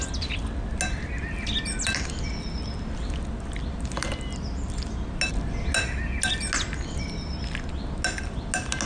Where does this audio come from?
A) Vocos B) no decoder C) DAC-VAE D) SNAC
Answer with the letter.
B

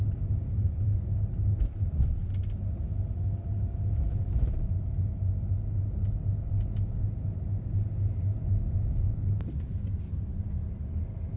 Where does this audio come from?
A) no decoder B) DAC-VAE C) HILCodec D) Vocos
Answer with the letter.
A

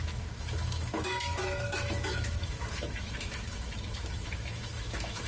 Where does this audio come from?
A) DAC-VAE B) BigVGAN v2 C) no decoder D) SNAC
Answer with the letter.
A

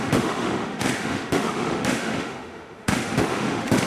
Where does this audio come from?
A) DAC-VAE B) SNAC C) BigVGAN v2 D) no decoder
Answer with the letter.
A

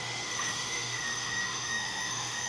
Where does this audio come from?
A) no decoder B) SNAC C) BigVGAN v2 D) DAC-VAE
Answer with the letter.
D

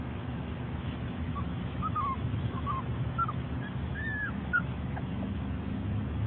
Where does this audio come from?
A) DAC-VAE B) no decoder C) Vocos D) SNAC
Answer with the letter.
A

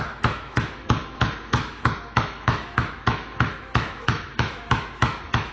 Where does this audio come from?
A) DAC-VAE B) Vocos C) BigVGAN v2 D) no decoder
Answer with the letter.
A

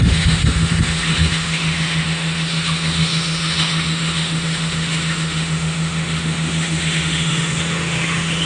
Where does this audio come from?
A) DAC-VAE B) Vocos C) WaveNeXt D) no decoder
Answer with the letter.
A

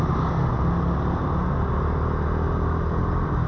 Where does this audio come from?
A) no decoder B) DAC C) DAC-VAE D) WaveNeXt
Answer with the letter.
A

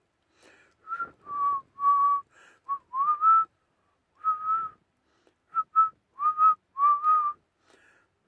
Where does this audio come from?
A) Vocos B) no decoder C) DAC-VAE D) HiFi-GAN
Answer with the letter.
B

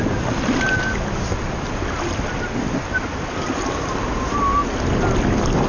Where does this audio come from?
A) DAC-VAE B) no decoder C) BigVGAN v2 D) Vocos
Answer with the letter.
B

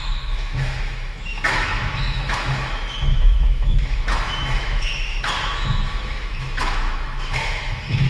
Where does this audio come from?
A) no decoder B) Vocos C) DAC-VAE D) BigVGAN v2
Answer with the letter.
C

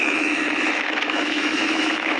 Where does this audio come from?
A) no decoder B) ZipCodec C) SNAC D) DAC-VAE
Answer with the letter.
D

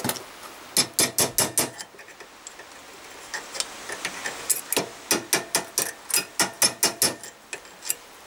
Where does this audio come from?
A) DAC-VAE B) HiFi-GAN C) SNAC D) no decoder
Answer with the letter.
D